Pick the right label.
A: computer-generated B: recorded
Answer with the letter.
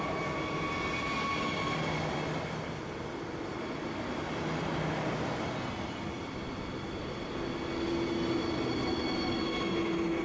B